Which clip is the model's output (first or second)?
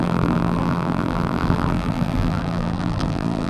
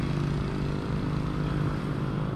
first